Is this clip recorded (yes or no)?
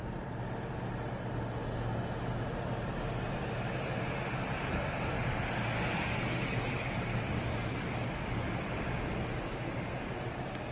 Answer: yes